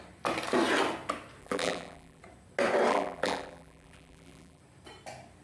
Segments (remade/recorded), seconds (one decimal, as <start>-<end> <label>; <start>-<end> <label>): 0.0-1.4 recorded; 1.4-2.2 remade; 2.2-2.9 recorded; 2.9-4.6 remade; 4.6-5.4 recorded